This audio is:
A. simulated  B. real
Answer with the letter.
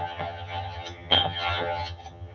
A